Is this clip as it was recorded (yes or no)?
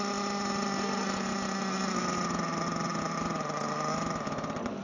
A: yes